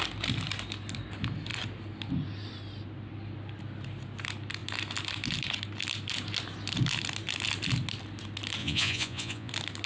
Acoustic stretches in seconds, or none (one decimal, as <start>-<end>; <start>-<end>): 0.0-8.6; 9.5-9.9